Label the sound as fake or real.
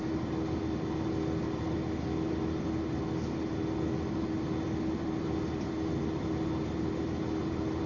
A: real